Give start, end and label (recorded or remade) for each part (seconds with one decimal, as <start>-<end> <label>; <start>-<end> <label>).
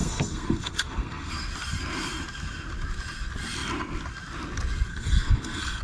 0.0-1.3 remade; 1.3-4.9 recorded; 4.9-5.8 remade